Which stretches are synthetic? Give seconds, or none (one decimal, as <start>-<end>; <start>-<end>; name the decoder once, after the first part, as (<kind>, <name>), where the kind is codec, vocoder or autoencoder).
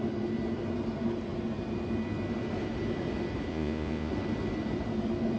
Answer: 3.5-4.1 (vocoder, Vocos)